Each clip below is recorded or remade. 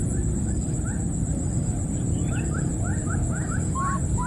recorded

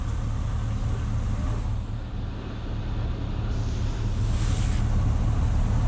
recorded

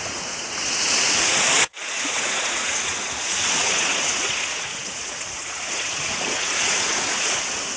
remade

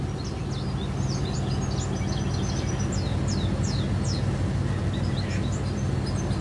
recorded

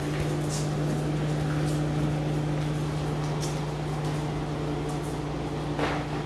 recorded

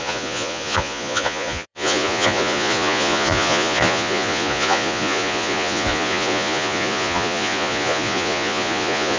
remade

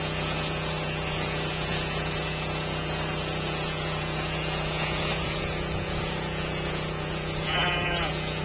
remade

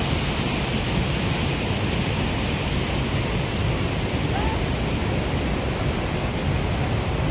recorded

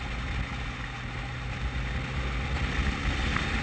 recorded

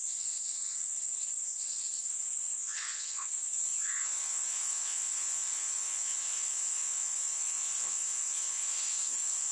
remade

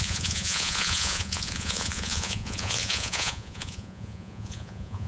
remade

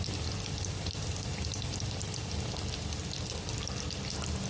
recorded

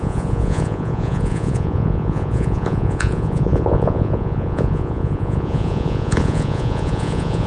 remade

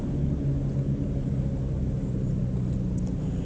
recorded